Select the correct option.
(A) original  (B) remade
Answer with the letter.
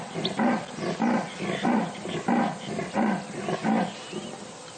A